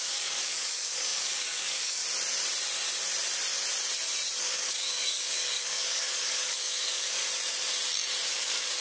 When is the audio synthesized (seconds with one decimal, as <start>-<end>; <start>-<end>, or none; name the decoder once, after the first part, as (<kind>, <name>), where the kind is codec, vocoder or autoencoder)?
0.0-2.0 (codec, DAC); 4.4-7.2; 8.3-8.8